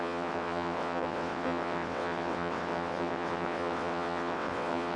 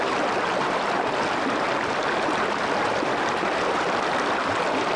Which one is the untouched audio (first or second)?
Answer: second